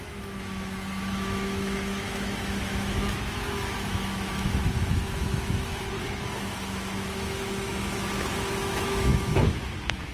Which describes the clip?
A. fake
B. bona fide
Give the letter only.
A